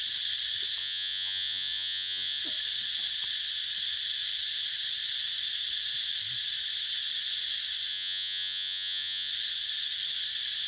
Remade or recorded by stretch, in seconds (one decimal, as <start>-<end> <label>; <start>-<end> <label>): 0.0-0.8 recorded; 0.8-2.4 remade; 2.4-7.9 recorded; 7.9-9.3 remade; 9.3-10.7 recorded